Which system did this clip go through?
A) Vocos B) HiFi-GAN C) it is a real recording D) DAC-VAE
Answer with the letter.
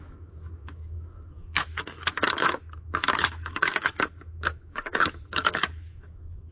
D